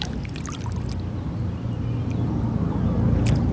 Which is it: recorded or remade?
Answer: recorded